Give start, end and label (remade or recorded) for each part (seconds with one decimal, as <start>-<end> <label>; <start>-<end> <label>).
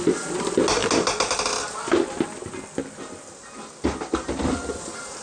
0.0-5.2 recorded